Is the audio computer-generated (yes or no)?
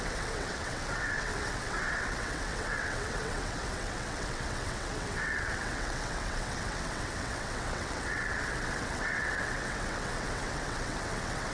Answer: yes